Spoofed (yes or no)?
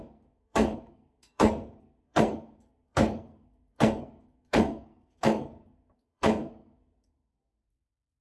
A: yes